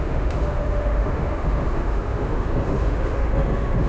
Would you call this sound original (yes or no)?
no